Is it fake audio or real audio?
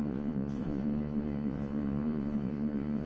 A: fake